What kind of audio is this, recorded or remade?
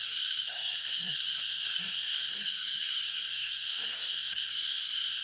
remade